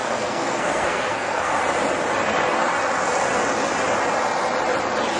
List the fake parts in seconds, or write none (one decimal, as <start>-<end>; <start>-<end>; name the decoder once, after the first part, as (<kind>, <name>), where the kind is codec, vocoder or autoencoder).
0.0-1.6 (codec, SNAC)